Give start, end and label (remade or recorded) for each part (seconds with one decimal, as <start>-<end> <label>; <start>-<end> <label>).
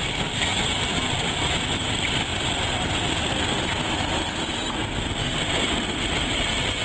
0.0-0.5 remade; 0.5-1.7 recorded; 1.7-2.3 remade; 2.3-5.8 recorded; 5.8-6.8 remade